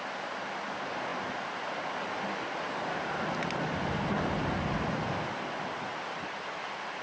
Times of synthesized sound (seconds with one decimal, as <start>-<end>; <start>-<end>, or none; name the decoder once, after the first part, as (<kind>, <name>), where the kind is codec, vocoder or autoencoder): none